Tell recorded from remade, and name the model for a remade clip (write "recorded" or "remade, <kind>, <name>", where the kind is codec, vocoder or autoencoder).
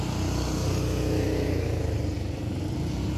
recorded